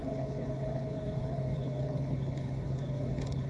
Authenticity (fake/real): fake